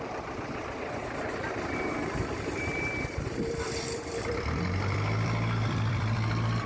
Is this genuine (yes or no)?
no